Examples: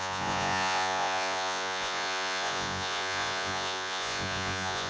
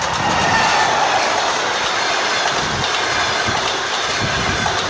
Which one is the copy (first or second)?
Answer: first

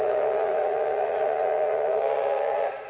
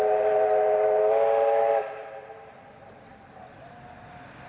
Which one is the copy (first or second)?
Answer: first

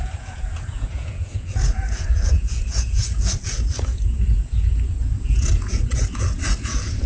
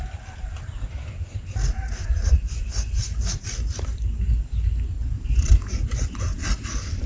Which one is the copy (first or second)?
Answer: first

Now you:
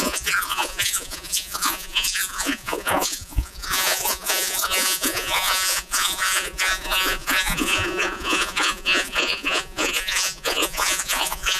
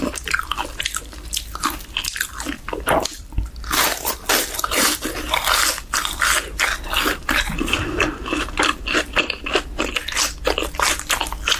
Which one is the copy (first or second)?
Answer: first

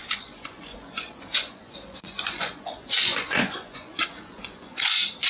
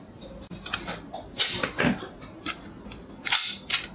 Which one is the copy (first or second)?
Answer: first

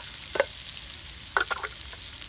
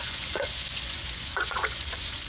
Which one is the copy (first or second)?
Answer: second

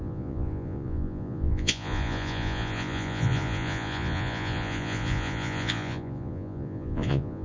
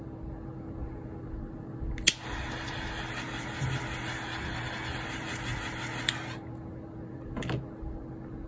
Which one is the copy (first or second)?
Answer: first